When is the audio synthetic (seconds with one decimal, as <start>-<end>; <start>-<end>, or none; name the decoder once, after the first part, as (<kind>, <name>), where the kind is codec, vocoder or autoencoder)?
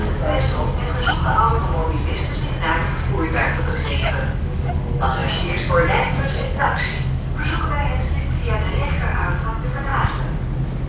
0.0-1.8 (codec, DAC); 2.7-9.9